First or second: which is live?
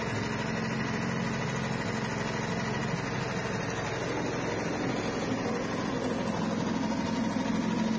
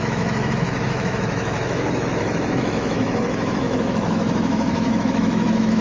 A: first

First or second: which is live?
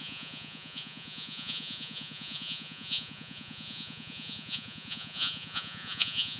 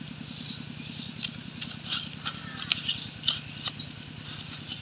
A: second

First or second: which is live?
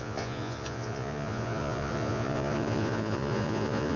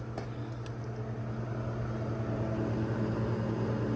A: second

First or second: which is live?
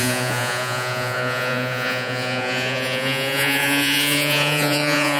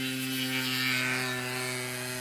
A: second